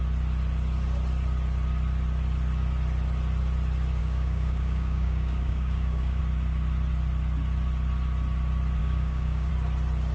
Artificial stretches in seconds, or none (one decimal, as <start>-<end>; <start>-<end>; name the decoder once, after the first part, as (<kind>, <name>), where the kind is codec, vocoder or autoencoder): 4.0-6.2 (codec, DAC); 8.8-9.5